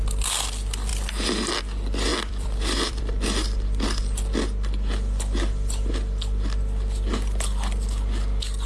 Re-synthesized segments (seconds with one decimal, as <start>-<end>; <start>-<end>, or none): 2.1-3.0